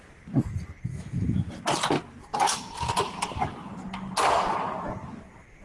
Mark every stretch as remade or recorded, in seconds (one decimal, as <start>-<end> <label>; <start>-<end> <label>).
0.0-0.9 recorded; 0.9-1.5 remade; 1.5-5.6 recorded